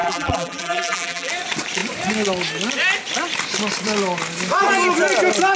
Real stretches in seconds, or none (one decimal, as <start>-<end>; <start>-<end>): 1.3-5.6